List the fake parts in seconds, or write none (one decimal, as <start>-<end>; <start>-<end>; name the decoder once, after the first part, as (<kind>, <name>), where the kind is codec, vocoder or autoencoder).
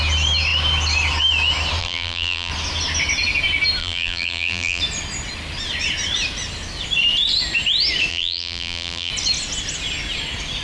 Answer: 1.8-2.5 (vocoder, BigVGAN v2); 3.8-4.8; 8.1-9.1